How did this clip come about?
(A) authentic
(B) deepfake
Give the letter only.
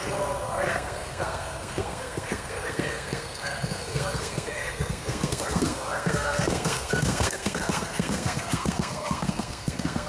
B